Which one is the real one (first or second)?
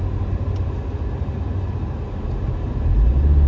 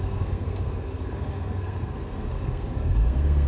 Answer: first